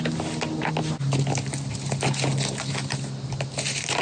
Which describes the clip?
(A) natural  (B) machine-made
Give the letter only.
A